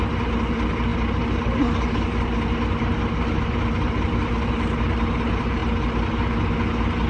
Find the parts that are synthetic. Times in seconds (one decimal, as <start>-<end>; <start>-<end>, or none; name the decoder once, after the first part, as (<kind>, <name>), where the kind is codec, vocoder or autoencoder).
none

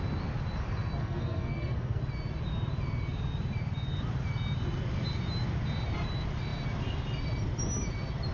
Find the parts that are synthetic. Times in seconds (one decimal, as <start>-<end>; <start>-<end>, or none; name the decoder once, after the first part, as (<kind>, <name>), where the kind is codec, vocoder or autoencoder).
1.0-2.0 (codec, SNAC)

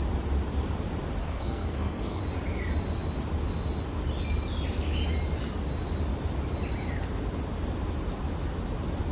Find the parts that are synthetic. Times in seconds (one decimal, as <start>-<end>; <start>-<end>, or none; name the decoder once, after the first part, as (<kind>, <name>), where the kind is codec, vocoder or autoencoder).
1.2-2.2 (codec, SNAC)

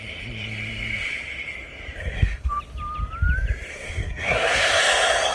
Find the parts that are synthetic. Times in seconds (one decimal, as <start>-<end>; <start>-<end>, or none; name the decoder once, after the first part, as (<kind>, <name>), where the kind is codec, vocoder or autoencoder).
2.0-2.5 (codec, SNAC); 3.7-4.8

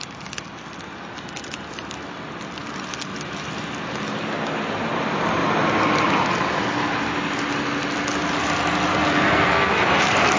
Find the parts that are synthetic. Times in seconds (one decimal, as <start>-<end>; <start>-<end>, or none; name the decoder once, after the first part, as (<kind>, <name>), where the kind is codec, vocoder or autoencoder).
8.9-9.8 (codec, SNAC)

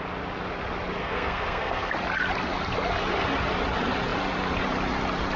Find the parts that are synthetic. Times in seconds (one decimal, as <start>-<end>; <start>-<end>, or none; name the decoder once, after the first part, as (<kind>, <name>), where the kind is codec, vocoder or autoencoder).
1.0-1.9 (codec, SNAC)